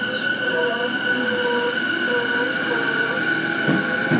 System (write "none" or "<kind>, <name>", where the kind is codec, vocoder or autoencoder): none